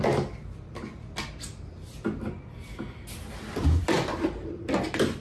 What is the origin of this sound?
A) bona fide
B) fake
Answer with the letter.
A